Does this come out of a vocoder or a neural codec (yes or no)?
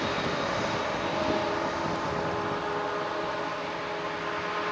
no